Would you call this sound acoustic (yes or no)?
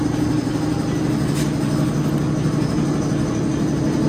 yes